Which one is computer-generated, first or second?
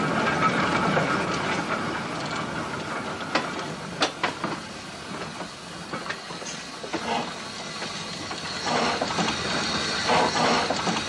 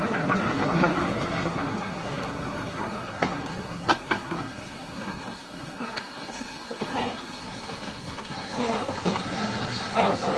second